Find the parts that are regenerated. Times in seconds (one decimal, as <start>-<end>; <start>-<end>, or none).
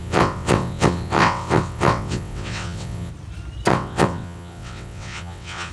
0.0-3.1; 3.7-5.7